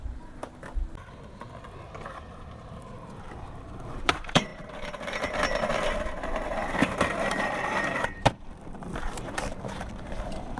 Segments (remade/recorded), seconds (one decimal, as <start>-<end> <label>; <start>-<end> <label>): 0.0-0.4 remade; 0.4-1.8 recorded; 1.8-10.6 remade